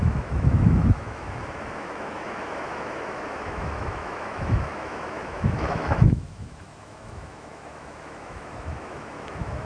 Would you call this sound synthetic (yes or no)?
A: yes